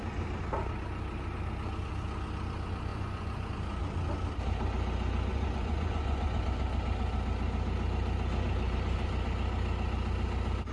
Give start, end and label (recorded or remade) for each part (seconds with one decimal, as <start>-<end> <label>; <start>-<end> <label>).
0.0-2.9 recorded; 2.9-3.5 remade; 3.5-5.3 recorded; 5.3-6.4 remade; 6.4-10.7 recorded